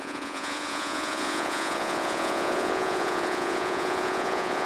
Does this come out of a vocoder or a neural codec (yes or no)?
yes